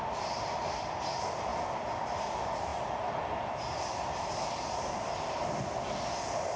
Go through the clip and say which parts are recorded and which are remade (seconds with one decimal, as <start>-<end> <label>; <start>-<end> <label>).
0.0-6.6 recorded